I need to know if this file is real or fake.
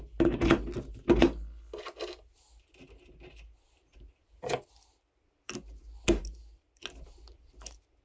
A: real